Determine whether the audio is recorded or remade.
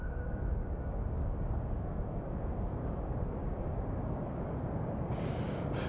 remade